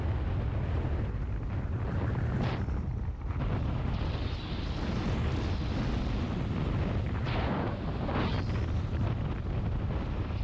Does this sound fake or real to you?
real